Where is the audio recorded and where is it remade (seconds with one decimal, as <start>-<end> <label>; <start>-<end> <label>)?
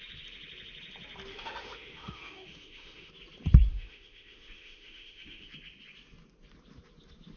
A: 0.0-1.3 recorded; 1.3-3.1 remade; 3.1-3.7 recorded; 3.7-5.5 remade; 5.5-7.4 recorded